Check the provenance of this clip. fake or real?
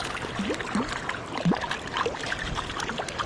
real